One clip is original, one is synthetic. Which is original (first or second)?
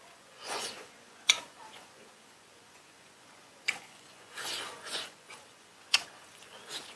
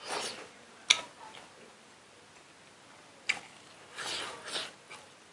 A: second